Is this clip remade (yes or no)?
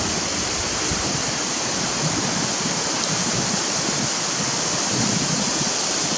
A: no